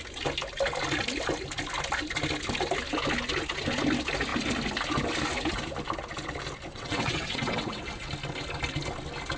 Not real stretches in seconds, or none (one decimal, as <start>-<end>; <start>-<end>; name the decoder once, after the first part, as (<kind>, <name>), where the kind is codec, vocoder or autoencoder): 6.7-8.1 (vocoder, WaveNeXt)